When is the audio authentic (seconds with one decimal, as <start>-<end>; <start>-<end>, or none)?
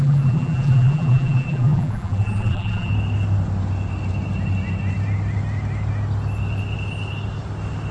2.9-7.9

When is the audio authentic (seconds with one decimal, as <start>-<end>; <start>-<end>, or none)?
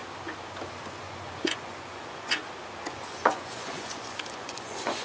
0.0-0.9; 2.4-2.9